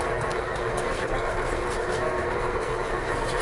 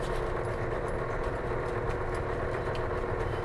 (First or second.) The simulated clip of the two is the first